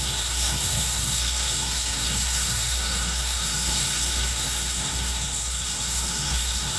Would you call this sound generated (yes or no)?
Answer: yes